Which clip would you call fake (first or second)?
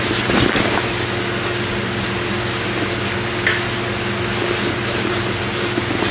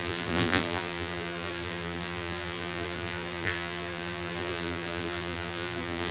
second